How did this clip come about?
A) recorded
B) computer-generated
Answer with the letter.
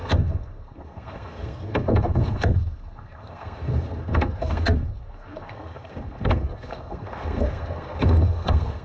B